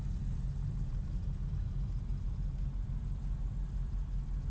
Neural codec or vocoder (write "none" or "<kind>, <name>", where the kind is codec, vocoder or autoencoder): none